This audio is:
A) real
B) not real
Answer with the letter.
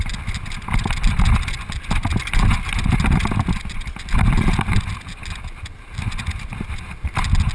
A